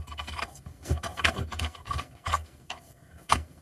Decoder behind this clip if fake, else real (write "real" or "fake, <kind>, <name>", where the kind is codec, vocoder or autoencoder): fake, codec, SNAC